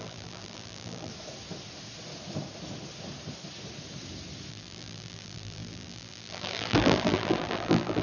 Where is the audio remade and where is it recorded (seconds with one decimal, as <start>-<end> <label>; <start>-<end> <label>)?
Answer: 0.0-1.1 remade; 1.1-4.5 recorded; 4.5-8.0 remade